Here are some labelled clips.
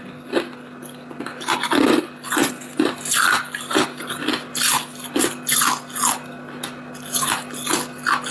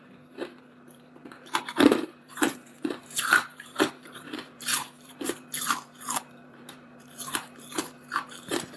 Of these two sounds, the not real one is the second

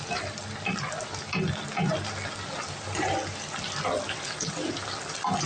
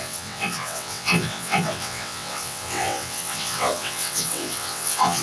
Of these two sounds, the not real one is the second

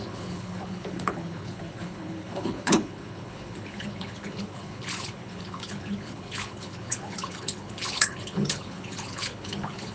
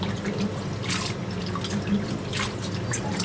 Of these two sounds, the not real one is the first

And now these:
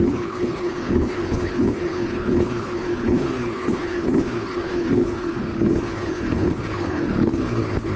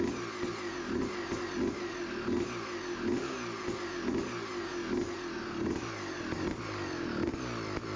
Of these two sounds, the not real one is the first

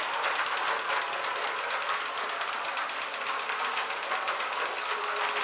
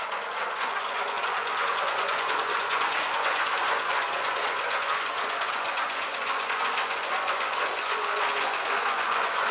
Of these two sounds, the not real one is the second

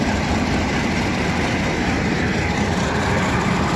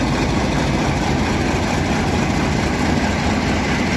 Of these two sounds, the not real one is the first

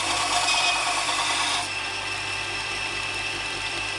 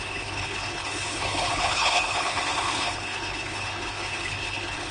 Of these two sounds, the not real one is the second